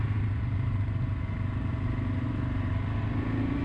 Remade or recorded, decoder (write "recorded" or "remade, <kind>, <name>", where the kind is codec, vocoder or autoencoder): recorded